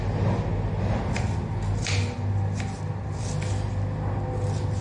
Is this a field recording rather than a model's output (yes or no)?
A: yes